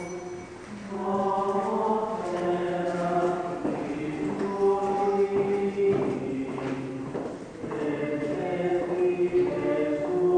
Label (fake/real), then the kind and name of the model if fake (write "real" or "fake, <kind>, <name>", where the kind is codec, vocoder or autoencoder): real